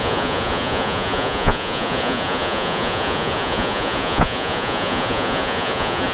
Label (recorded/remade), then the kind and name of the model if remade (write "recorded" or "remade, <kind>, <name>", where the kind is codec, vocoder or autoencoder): remade, vocoder, Vocos